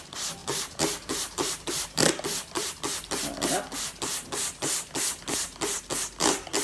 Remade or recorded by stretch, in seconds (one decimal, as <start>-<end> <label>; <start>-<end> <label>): 0.0-0.4 recorded; 0.4-2.1 remade; 2.1-6.6 recorded